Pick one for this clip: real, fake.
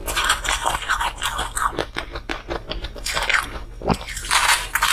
real